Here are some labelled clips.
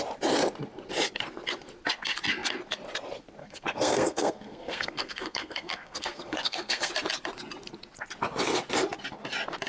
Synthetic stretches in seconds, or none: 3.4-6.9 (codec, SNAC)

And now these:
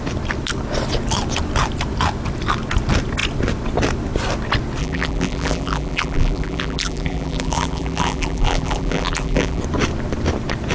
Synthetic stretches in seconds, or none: 4.8-9.6 (vocoder, BigVGAN v2)

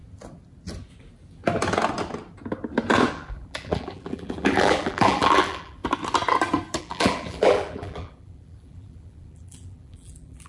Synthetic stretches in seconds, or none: 3.1-5.8 (vocoder, BigVGAN v2); 6.8-10.5

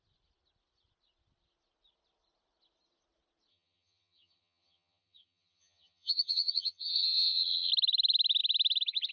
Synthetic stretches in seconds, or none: 3.5-7.7 (vocoder, HiFi-GAN)

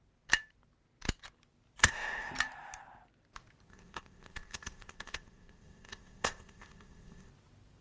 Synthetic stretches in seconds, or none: 1.8-2.3 (codec, ZipCodec); 3.7-7.3

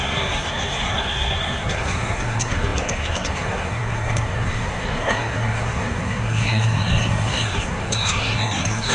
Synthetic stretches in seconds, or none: 0.0-8.9 (codec, SNAC)

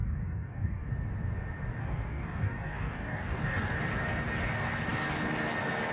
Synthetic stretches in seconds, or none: 0.0-0.9 (codec, DAC); 1.8-3.8

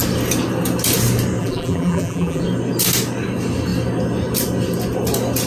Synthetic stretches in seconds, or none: 1.4-2.4 (vocoder, BigVGAN v2)